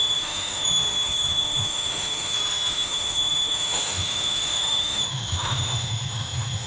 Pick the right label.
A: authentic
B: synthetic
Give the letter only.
B